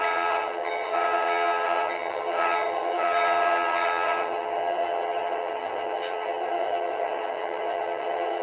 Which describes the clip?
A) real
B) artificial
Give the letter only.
B